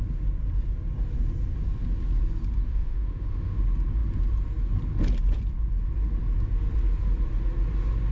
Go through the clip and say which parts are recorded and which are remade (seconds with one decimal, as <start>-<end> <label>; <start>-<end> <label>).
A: 0.0-2.7 recorded; 2.7-3.6 remade; 3.6-8.1 recorded